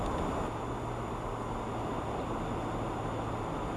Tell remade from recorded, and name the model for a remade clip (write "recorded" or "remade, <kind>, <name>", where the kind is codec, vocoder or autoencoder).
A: recorded